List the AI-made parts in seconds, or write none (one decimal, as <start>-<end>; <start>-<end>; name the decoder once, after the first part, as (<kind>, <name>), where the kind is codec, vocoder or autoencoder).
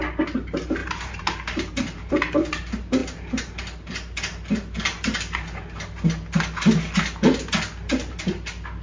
0.8-2.1 (vocoder, BigVGAN v2)